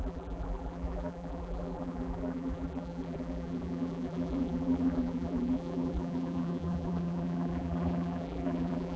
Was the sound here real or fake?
fake